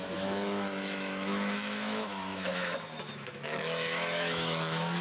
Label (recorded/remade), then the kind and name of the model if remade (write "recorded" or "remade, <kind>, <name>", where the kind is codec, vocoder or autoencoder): remade, autoencoder, DAC-VAE